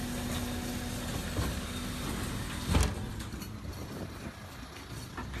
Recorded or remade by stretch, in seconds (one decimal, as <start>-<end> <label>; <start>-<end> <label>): 0.0-5.4 recorded